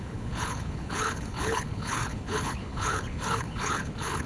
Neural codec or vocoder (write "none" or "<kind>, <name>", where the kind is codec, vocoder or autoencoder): codec, HILCodec